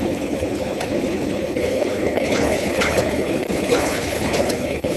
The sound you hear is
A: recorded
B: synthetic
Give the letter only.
B